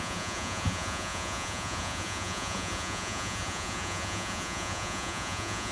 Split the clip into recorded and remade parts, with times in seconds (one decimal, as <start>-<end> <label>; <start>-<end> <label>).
0.0-5.7 remade